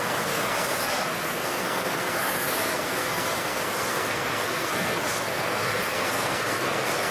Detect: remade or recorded remade